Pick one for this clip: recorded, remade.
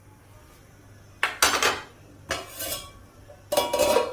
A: recorded